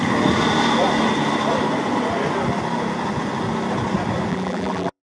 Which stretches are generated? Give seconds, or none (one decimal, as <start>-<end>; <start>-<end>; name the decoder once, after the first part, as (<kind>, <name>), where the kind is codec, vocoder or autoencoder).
4.3-5.0 (vocoder, BigVGAN v2)